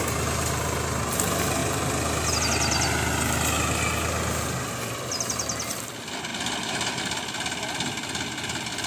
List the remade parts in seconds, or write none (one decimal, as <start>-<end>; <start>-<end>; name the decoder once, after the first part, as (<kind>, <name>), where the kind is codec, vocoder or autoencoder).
6.3-7.0 (vocoder, BigVGAN v2)